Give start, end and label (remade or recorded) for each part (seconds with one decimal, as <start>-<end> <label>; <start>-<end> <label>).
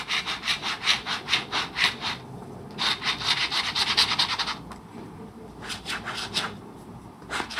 0.0-7.6 recorded